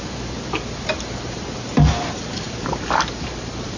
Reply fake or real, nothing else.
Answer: real